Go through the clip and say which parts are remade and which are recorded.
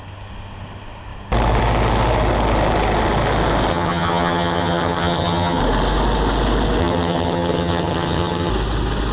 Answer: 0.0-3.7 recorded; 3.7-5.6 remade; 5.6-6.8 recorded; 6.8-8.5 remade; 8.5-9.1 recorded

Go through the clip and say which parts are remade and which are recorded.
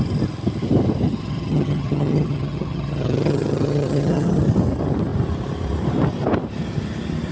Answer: 0.0-1.1 recorded; 1.1-4.4 remade; 4.4-7.3 recorded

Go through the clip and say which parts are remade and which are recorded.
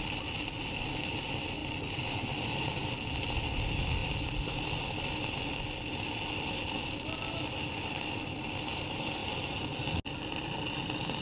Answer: 0.0-11.2 recorded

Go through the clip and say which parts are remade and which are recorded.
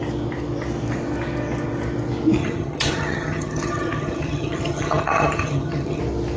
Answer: 0.0-2.4 recorded; 2.4-6.0 remade; 6.0-6.4 recorded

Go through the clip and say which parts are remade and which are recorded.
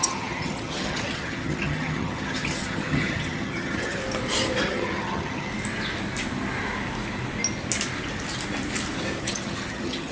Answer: 0.0-4.0 remade; 4.0-4.6 recorded; 4.6-5.5 remade; 5.5-9.2 recorded; 9.2-10.1 remade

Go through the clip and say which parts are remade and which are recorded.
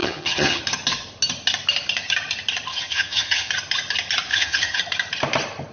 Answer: 0.0-0.6 remade; 0.6-2.7 recorded; 2.7-3.5 remade; 3.5-4.3 recorded; 4.3-4.8 remade; 4.8-5.7 recorded